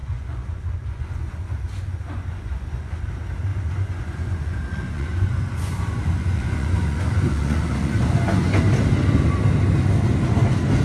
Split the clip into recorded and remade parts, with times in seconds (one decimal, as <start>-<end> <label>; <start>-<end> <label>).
0.0-3.1 remade; 3.1-3.5 recorded; 3.5-8.6 remade; 8.6-10.8 recorded